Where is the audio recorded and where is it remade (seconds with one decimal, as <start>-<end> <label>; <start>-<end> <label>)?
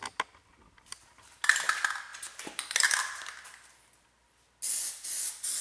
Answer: 0.0-5.6 recorded